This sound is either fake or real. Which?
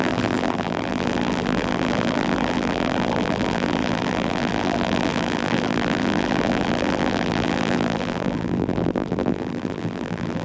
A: fake